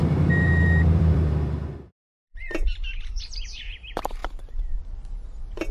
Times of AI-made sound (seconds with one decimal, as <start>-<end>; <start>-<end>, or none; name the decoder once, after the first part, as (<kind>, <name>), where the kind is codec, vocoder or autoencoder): 0.0-5.7 (vocoder, BigVGAN v2)